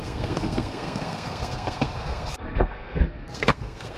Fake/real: fake